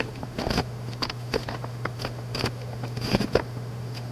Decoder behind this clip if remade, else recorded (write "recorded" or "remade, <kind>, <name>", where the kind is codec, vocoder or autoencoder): remade, autoencoder, DAC-VAE